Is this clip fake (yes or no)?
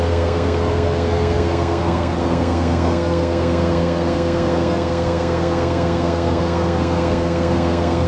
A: yes